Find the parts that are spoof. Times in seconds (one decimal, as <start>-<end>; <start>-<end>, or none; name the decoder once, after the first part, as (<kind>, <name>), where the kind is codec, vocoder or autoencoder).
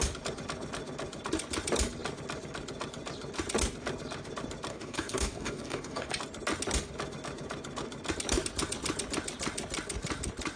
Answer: 4.7-6.1 (codec, DAC)